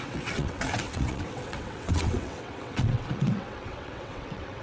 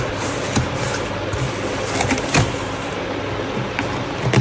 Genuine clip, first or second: second